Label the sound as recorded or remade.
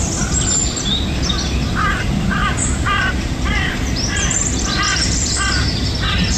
recorded